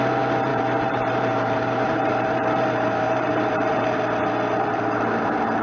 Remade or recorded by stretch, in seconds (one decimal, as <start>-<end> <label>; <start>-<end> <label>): 0.0-0.5 recorded; 0.5-3.9 remade; 3.9-5.6 recorded